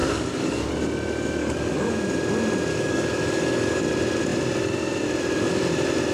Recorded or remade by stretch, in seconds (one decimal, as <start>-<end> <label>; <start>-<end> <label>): 0.0-0.7 remade; 0.7-1.4 recorded; 1.4-1.9 remade; 1.9-2.7 recorded; 2.7-3.8 remade; 3.8-6.1 recorded